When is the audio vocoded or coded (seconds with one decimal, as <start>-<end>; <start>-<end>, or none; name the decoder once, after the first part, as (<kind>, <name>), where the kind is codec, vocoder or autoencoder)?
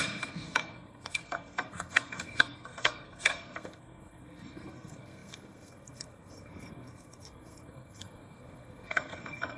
0.0-9.6 (codec, SNAC)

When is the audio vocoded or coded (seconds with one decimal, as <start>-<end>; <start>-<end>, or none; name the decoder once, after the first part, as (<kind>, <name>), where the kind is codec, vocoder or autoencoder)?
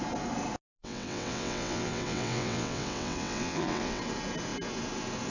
0.8-4.0 (vocoder, WaveNeXt)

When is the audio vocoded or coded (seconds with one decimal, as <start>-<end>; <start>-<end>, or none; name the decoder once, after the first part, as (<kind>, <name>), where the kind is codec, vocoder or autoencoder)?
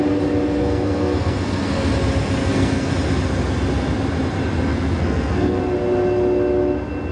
0.6-1.9 (codec, SNAC); 2.4-2.9; 4.7-5.6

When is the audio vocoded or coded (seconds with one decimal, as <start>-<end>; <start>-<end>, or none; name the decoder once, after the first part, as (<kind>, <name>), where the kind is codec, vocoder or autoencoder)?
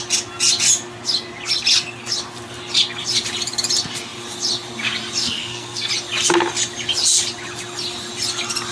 5.2-5.9 (codec, SNAC)